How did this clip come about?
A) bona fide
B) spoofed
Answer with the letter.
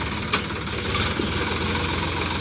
A